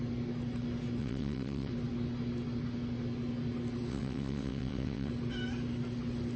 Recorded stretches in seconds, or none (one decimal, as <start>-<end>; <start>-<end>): 0.0-1.0; 1.7-3.9; 5.1-6.4